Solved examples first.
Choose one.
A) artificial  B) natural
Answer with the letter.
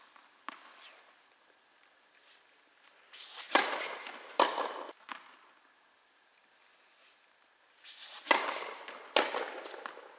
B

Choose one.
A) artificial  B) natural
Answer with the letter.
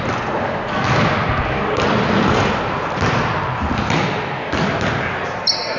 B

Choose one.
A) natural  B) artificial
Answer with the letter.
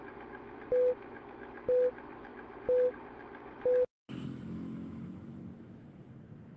B